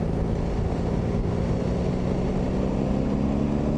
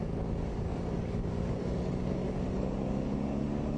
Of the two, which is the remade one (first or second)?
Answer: second